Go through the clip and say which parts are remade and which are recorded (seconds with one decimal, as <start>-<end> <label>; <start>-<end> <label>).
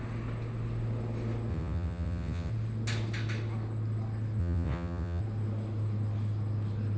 0.0-1.5 recorded; 1.5-2.5 remade; 2.5-4.4 recorded; 4.4-5.2 remade; 5.2-7.0 recorded